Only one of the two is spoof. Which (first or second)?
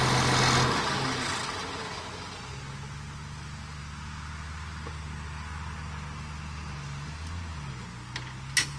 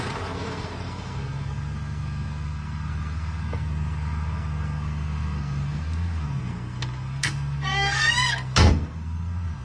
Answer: second